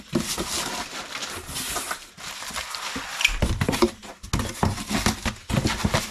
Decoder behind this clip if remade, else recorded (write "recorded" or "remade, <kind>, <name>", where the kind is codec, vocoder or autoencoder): recorded